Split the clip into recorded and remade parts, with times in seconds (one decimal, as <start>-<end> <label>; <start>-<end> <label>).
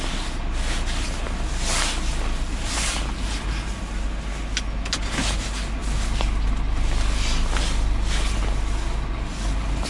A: 0.0-9.9 recorded